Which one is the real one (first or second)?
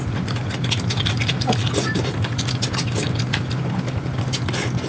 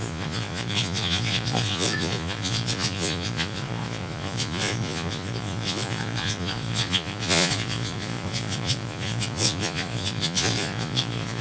first